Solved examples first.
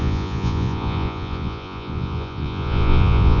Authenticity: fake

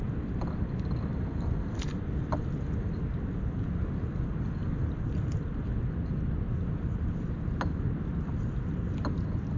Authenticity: real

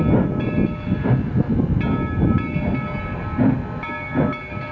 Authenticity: real